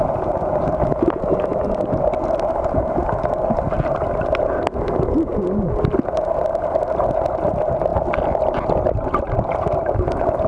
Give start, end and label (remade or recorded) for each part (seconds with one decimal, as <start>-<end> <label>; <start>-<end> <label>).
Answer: 0.0-10.5 recorded